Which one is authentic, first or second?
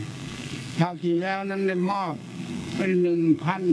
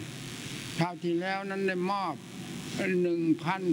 second